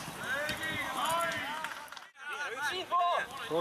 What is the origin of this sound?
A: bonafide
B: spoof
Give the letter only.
A